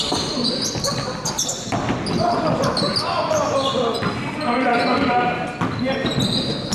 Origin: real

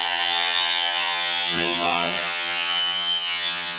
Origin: fake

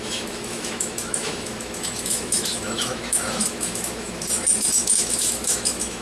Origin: fake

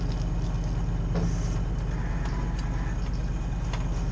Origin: real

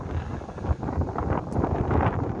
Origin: real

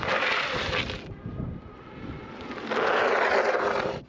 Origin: real